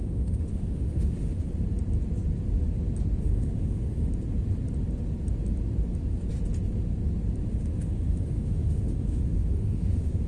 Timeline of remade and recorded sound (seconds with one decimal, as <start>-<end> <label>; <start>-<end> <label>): 0.0-1.5 remade; 1.5-3.2 recorded; 3.2-4.1 remade; 4.1-7.5 recorded; 7.5-10.3 remade

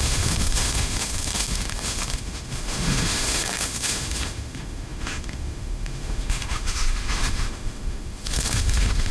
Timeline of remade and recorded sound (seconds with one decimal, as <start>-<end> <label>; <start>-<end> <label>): 0.0-9.1 remade

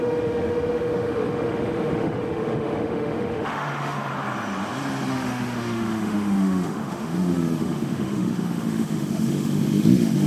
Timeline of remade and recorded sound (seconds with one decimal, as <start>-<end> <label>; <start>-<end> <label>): 0.0-4.1 remade; 4.1-5.1 recorded; 5.1-10.3 remade

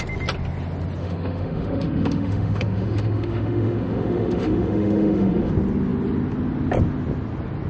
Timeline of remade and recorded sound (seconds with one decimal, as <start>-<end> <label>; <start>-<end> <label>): 0.0-1.0 recorded; 1.0-5.5 remade; 5.5-7.7 recorded